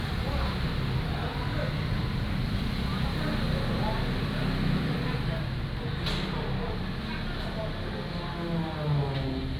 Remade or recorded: recorded